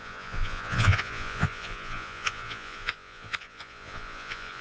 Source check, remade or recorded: remade